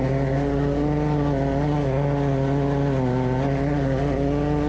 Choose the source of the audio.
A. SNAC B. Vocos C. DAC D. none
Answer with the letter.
D